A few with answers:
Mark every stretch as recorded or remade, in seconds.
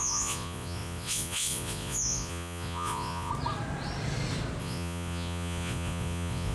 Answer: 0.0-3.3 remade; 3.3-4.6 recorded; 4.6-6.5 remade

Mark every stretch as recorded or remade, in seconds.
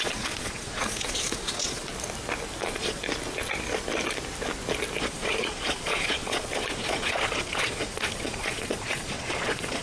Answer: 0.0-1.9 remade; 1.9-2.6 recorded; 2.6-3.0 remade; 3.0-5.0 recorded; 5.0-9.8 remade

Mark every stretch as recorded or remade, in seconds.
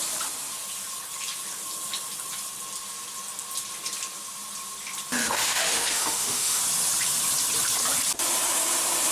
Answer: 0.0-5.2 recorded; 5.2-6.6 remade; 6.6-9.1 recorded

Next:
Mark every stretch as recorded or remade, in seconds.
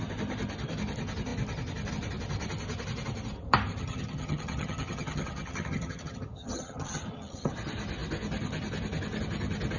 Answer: 0.0-3.8 recorded; 3.8-7.5 remade; 7.5-9.8 recorded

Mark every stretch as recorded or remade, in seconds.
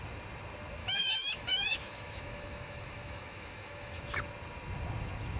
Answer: 0.0-0.8 recorded; 0.8-4.0 remade; 4.0-5.4 recorded